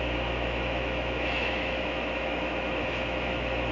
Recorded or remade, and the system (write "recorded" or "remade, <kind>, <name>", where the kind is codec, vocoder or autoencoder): remade, autoencoder, DAC-VAE